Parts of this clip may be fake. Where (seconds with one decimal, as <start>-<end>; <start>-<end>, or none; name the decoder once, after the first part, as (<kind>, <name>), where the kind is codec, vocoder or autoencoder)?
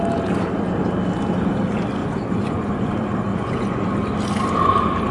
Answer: 2.0-2.9 (vocoder, Vocos); 3.3-3.9